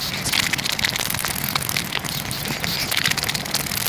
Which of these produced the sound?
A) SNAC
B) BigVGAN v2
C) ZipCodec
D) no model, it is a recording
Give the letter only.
D